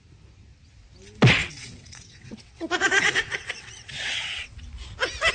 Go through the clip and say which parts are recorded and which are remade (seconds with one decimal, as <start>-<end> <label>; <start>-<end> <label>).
0.0-1.4 recorded; 1.4-4.6 remade; 4.6-5.3 recorded